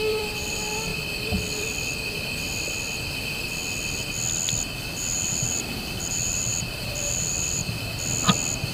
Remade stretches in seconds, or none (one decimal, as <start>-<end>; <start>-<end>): 0.0-0.9; 4.9-7.6